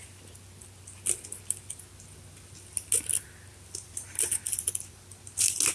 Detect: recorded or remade recorded